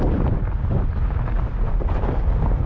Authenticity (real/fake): real